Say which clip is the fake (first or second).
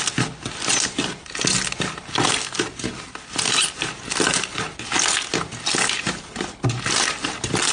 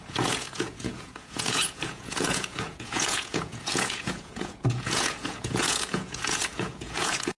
second